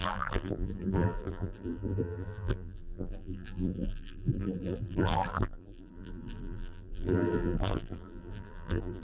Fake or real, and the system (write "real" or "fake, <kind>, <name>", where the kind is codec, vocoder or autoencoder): fake, vocoder, BigVGAN v2